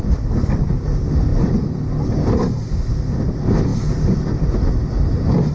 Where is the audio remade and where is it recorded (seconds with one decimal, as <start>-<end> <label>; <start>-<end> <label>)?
0.0-5.5 recorded